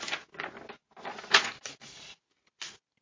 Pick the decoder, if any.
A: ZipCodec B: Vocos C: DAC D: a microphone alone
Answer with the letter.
D